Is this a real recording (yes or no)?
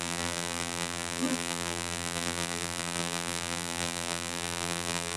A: no